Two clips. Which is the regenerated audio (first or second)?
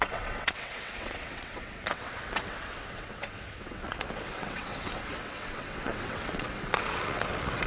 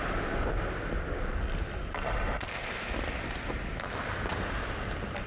first